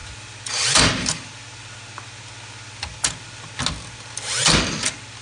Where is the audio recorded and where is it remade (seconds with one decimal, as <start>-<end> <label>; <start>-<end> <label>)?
0.0-5.2 recorded